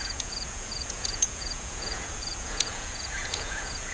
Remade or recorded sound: remade